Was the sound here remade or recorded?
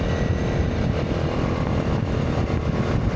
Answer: recorded